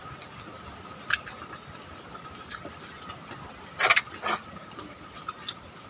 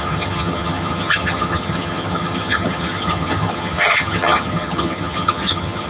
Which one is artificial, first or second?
second